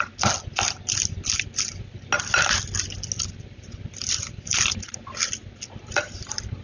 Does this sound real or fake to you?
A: real